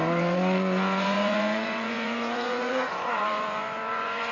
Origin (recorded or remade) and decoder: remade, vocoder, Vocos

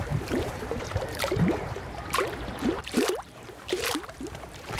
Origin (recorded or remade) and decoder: remade, vocoder, BigVGAN v2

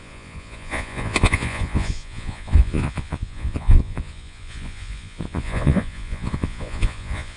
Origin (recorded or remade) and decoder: remade, vocoder, Vocos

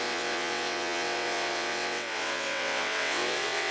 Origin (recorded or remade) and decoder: remade, vocoder, WaveNeXt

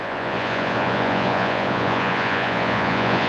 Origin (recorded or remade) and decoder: remade, vocoder, Vocos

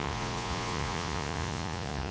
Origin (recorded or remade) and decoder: remade, vocoder, Vocos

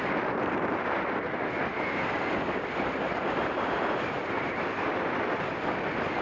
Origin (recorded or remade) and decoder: recorded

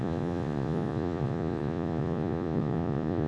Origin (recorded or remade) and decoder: remade, vocoder, Vocos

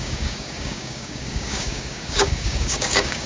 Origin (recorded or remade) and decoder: remade, codec, DAC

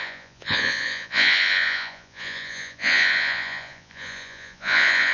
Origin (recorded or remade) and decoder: remade, vocoder, Vocos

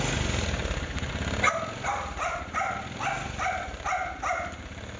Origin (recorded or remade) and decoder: recorded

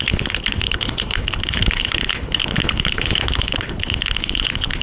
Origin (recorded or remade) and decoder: remade, codec, HILCodec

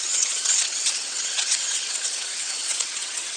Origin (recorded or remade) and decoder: remade, vocoder, WaveNeXt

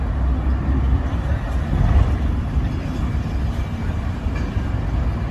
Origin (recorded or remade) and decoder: recorded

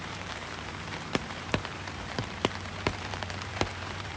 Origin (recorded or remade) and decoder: remade, vocoder, BigVGAN v2